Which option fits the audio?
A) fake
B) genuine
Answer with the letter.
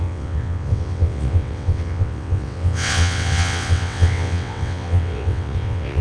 A